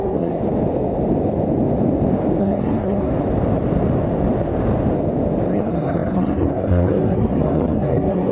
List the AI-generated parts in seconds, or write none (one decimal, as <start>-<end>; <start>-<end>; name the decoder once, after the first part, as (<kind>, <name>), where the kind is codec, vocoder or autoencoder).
0.0-0.4 (codec, SNAC); 2.4-3.1; 5.5-8.3